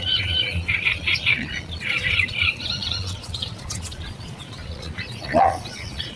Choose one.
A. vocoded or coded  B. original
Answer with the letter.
A